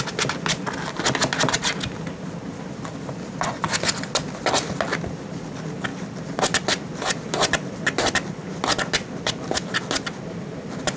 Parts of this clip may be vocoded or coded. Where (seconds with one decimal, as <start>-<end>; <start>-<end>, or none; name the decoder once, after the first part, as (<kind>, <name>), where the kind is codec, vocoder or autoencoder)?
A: none